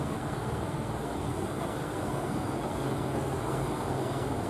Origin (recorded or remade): remade